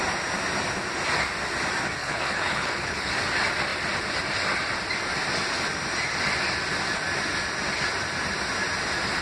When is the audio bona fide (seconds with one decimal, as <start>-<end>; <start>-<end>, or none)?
0.0-2.0; 3.1-9.2